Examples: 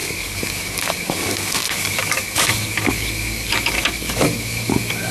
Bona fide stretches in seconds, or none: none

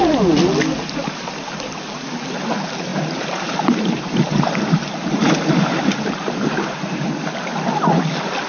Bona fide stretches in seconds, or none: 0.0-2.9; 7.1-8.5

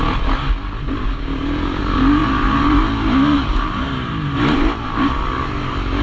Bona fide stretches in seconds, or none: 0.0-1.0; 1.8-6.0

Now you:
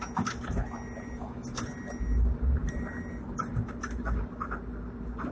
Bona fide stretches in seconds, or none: 0.0-5.3

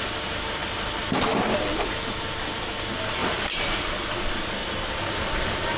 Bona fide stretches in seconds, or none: 0.0-3.2; 3.8-4.6; 5.1-5.8

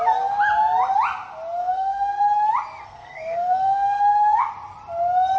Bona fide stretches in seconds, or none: 0.0-1.6; 2.2-2.8; 4.5-5.4